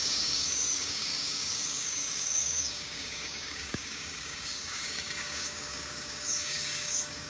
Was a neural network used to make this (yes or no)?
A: yes